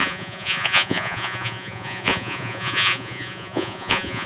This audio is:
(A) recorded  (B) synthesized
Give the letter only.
B